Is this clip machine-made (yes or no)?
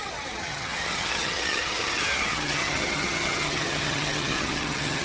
yes